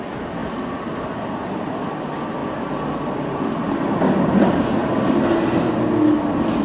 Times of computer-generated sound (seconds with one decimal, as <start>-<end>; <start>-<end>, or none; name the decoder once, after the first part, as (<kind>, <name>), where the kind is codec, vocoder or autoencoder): none